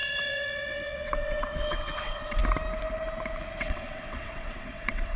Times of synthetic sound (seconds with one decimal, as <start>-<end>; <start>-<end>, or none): 0.0-2.4; 3.6-5.2